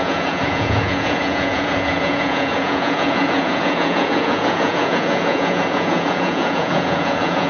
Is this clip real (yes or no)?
no